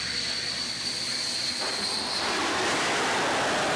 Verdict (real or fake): real